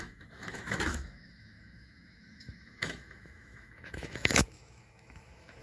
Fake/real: fake